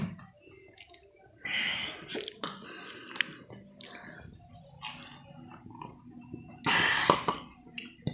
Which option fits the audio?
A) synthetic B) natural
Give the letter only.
B